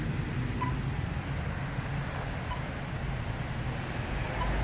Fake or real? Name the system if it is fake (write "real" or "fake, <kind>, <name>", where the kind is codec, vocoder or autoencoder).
real